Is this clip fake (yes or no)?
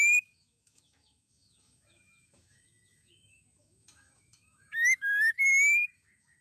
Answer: yes